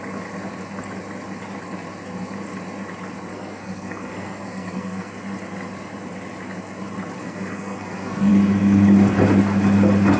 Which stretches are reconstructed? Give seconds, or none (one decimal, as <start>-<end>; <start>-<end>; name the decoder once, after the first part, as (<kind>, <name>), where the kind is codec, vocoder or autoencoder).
3.3-5.1 (codec, SNAC); 7.2-8.3